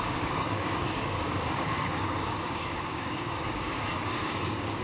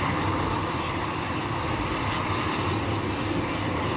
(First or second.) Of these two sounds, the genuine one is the second